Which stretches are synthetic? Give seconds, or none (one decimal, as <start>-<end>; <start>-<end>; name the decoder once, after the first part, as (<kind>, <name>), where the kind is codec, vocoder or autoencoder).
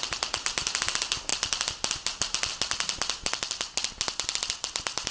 none